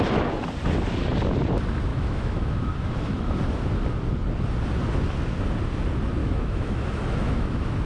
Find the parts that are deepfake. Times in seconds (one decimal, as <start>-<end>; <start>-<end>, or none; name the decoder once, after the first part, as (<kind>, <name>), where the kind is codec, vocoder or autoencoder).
1.9-3.3 (autoencoder, DAC-VAE); 6.2-7.8